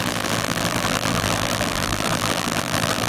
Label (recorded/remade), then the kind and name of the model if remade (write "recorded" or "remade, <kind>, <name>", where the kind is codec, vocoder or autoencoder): remade, vocoder, BigVGAN v2